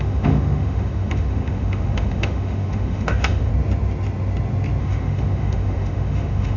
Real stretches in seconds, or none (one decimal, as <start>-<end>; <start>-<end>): 3.5-4.8